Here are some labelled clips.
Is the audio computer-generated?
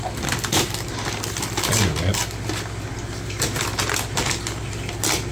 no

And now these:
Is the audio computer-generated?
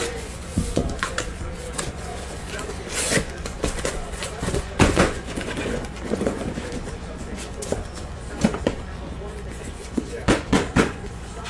yes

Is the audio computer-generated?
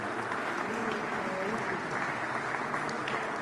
no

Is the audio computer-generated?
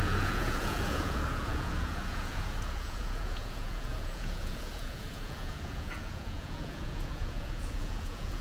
yes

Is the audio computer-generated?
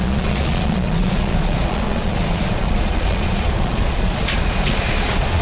yes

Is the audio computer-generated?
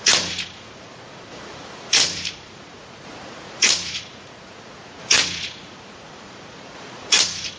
yes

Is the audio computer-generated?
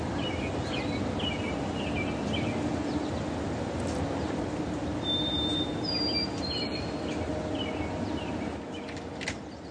no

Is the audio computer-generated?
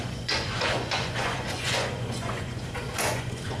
yes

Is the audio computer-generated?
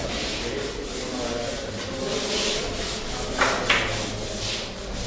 no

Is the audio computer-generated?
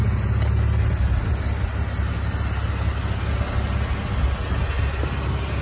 no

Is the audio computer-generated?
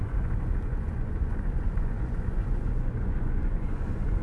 yes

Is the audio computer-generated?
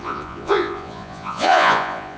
yes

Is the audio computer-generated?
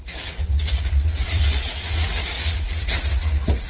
yes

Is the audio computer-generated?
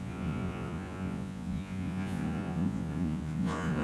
yes